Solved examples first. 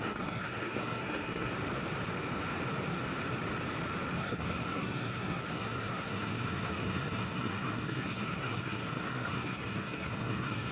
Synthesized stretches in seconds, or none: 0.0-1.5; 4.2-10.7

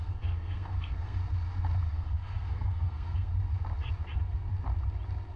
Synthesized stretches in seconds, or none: 0.0-1.2; 1.9-3.3

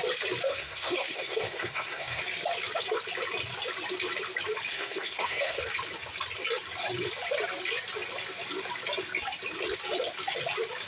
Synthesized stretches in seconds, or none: 0.5-2.2; 4.7-5.6

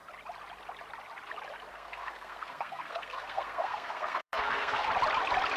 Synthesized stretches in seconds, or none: 1.7-4.9

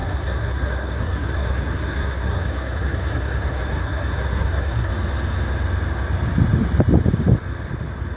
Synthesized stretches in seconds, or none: 0.0-4.9

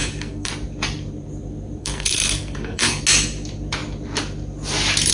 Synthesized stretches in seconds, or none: 0.0-0.5; 1.8-3.0

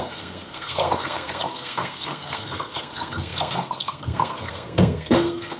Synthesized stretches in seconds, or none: 0.0-5.6

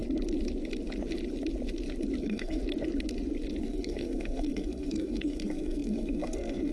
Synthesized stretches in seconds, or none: 2.2-2.6; 3.6-6.7